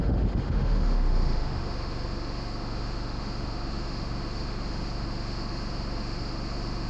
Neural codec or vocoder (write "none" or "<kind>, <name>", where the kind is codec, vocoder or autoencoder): autoencoder, DAC-VAE